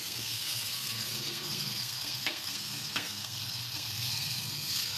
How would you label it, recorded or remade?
remade